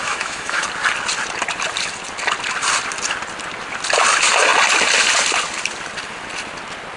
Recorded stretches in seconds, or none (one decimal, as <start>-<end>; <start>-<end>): 0.6-7.0